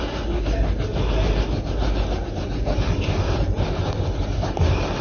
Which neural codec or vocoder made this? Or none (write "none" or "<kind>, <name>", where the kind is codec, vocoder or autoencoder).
none